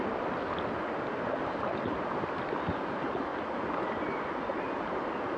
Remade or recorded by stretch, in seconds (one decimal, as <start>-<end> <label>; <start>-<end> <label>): 0.0-5.4 recorded